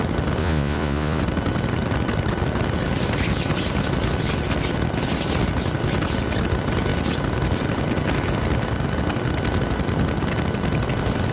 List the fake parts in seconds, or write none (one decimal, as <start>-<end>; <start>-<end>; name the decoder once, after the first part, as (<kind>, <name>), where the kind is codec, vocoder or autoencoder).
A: 0.4-1.2 (vocoder, Vocos)